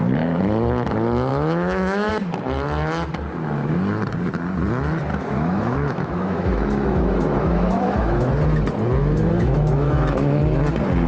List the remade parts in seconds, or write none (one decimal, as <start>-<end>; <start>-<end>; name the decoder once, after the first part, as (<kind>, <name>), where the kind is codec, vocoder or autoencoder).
1.3-2.1 (autoencoder, DAC-VAE); 5.1-8.3; 9.0-10.4